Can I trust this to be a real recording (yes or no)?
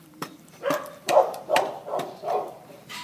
no